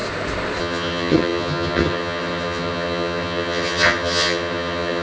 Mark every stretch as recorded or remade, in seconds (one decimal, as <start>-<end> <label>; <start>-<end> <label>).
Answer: 0.0-0.6 recorded; 0.6-5.0 remade